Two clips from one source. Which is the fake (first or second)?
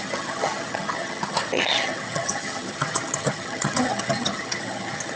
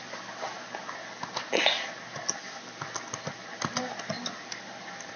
first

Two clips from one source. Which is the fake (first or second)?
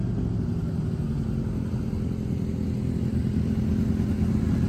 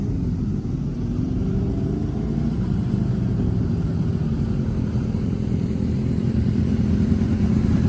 second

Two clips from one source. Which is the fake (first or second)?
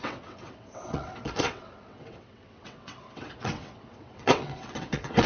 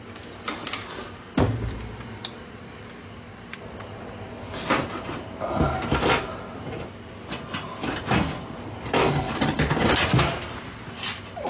first